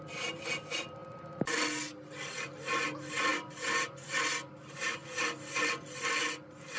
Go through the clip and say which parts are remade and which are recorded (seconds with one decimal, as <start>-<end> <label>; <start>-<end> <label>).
0.0-6.8 recorded